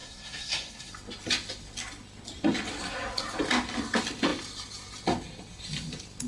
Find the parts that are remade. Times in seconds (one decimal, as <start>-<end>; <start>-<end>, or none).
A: 0.0-0.9